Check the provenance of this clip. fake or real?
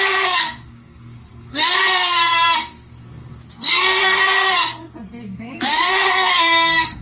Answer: fake